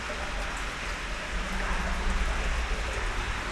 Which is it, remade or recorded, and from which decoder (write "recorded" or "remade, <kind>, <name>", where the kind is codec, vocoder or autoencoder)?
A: recorded